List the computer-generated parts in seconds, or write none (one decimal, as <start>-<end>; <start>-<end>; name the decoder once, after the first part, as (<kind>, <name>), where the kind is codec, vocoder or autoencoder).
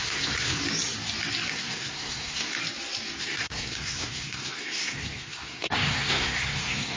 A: 0.0-0.6 (codec, SNAC); 1.5-2.5; 3.2-7.0